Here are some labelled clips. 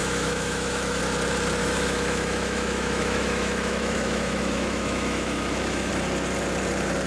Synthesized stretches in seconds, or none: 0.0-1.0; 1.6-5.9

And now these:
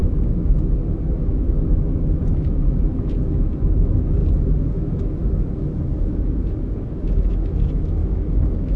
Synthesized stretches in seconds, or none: 0.0-4.2; 4.8-8.8